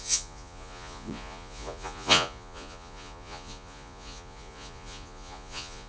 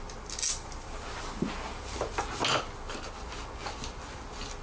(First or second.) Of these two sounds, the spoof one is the first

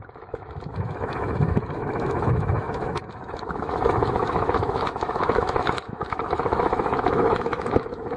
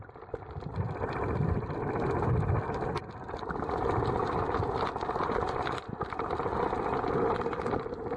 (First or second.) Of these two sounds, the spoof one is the first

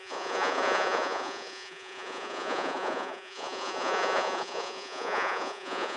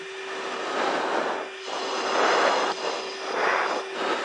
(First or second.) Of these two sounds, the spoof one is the first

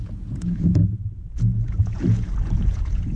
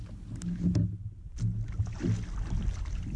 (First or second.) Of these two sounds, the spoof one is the first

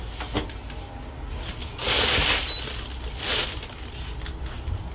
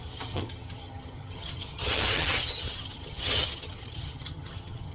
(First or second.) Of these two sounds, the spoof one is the second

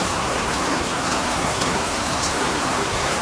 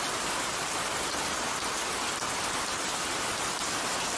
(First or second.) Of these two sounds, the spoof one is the first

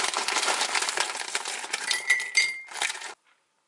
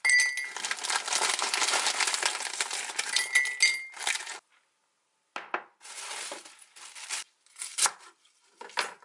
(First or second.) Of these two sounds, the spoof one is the first